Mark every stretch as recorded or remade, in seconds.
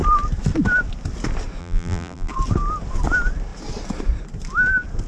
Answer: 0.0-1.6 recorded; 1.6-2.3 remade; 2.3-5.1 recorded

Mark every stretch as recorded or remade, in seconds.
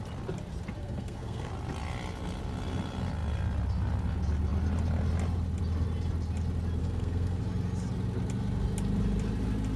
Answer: 0.0-0.8 recorded; 0.8-1.5 remade; 1.5-6.8 recorded; 6.8-7.4 remade; 7.4-9.8 recorded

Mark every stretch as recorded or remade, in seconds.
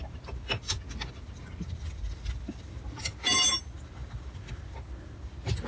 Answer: 0.0-5.7 recorded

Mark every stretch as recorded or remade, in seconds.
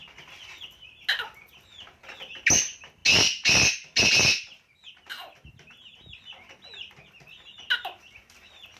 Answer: 0.0-8.8 recorded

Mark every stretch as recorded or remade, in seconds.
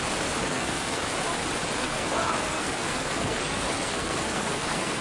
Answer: 0.0-0.4 recorded; 0.4-1.0 remade; 1.0-1.8 recorded; 1.8-5.0 remade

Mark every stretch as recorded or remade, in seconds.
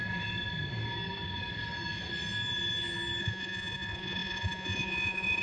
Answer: 0.0-3.2 recorded; 3.2-5.4 remade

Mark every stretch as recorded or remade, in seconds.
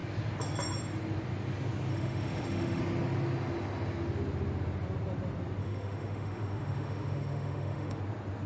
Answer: 0.0-1.9 recorded; 1.9-2.8 remade; 2.8-5.6 recorded; 5.6-8.0 remade; 8.0-8.5 recorded